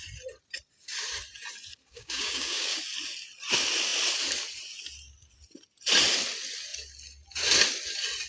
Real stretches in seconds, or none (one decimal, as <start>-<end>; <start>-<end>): 0.0-1.9; 2.8-8.3